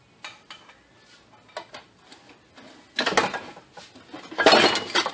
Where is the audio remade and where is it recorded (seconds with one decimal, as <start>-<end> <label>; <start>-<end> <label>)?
0.0-5.1 recorded